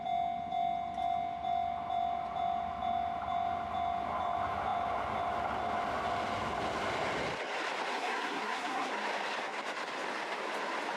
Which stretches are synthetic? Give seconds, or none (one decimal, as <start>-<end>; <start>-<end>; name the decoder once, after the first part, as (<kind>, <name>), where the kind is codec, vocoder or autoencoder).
7.9-8.9 (codec, SNAC)